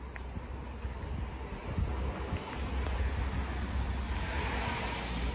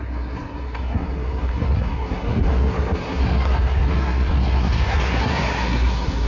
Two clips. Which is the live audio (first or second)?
first